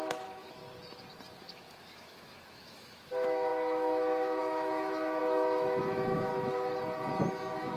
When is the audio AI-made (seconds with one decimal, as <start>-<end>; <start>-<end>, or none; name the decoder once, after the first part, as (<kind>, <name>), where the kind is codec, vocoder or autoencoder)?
0.0-0.6 (autoencoder, DAC-VAE); 1.4-6.3; 7.3-7.8